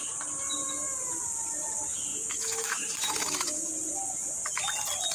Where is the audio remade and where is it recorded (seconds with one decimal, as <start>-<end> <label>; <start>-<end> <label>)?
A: 0.0-2.1 recorded; 2.1-3.7 remade; 3.7-5.1 recorded